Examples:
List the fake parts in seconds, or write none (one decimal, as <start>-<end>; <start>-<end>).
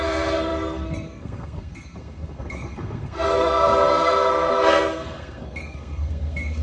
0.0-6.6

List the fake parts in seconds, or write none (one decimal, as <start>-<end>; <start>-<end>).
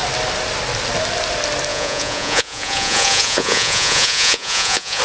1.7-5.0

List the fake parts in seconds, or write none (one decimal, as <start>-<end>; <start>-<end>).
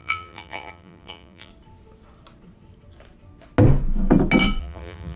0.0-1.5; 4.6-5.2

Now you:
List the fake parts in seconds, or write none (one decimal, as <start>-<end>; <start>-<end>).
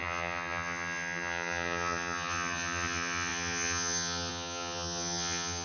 0.0-5.6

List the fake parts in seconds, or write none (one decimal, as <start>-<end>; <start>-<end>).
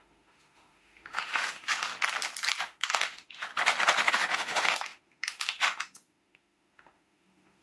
0.0-1.9; 2.6-3.5; 4.1-7.6